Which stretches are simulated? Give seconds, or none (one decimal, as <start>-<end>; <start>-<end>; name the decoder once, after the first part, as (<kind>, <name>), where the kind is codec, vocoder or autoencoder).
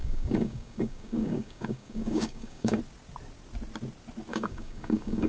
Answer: 0.0-2.8 (codec, DAC); 4.3-5.3